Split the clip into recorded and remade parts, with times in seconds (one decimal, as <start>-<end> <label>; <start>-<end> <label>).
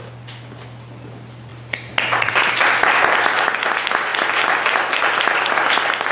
0.0-6.1 recorded